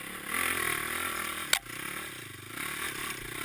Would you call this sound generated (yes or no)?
no